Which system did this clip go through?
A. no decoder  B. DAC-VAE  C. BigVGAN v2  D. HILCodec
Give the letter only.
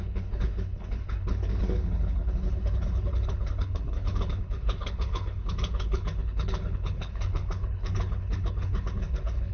D